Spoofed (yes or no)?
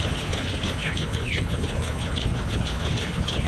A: yes